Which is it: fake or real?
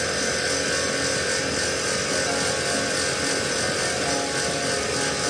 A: real